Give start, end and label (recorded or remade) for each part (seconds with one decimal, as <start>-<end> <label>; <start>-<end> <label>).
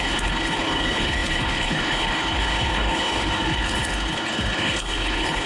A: 0.0-5.5 remade